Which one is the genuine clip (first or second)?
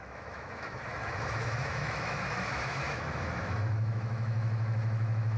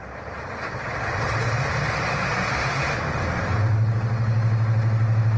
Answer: second